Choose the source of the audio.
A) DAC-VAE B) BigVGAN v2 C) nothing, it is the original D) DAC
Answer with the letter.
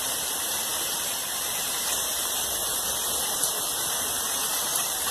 B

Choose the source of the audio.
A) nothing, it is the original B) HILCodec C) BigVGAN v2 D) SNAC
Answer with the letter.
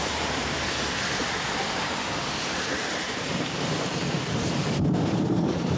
C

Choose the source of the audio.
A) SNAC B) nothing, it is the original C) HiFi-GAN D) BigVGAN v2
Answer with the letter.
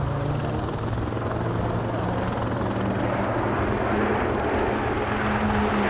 B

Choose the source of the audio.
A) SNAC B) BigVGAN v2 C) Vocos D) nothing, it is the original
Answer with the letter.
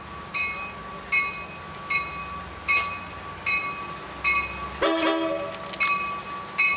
D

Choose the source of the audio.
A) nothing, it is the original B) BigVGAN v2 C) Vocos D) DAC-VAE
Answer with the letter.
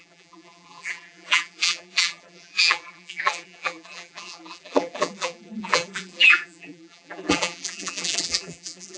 B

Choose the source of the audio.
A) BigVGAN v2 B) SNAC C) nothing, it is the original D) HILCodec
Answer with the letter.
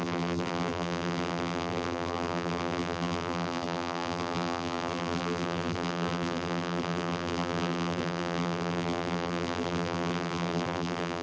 A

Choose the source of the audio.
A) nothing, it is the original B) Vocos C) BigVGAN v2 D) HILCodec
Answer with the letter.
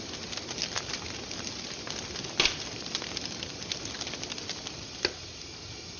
A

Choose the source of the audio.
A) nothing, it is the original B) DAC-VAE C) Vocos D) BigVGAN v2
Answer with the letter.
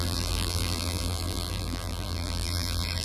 D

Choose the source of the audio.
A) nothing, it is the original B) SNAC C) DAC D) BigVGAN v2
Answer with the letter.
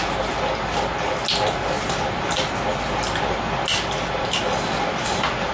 A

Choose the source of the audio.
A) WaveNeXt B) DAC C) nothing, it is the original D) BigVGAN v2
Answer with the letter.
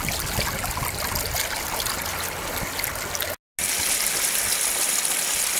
C